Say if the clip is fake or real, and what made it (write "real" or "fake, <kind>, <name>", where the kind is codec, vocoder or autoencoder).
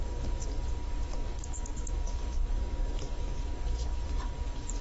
fake, codec, DAC